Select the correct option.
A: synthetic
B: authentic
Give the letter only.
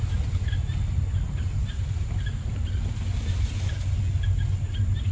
B